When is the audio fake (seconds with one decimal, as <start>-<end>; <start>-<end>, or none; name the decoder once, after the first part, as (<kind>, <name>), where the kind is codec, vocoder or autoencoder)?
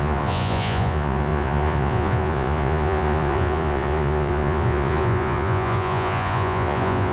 0.0-7.1 (vocoder, Vocos)